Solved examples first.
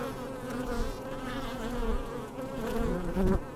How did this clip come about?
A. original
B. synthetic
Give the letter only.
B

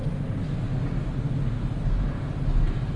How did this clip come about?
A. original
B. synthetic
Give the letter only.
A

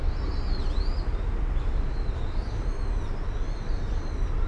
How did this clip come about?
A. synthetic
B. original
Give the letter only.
B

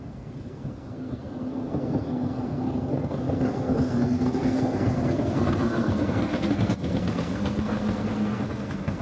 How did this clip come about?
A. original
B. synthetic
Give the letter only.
B